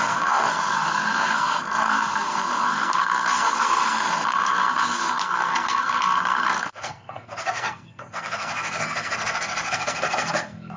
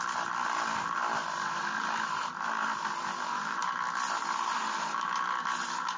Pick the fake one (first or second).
first